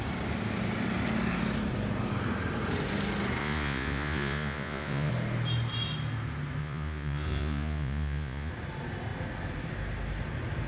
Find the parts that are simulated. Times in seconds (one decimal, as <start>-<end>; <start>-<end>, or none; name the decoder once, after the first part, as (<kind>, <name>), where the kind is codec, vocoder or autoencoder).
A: 3.4-5.1 (vocoder, Vocos); 6.6-8.5